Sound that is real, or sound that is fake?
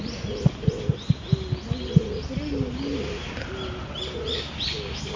real